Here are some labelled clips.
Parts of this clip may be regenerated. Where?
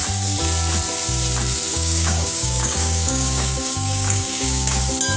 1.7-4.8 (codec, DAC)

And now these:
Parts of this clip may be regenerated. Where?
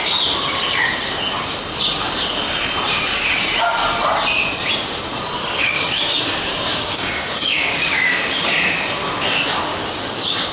5.4-8.3 (codec, DAC); 9.7-10.5